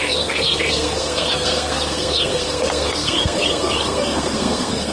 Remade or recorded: remade